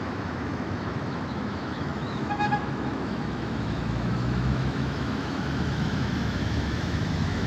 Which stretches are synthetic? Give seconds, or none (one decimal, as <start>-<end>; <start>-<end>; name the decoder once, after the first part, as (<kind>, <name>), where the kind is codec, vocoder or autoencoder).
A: 0.0-7.5 (autoencoder, DAC-VAE)